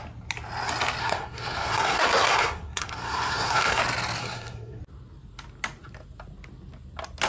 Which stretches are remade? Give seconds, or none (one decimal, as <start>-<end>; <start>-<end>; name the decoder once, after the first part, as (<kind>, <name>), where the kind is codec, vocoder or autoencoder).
1.0-3.8 (codec, SNAC); 4.2-4.8